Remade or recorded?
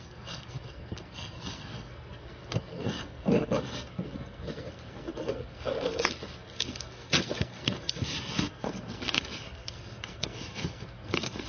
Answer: remade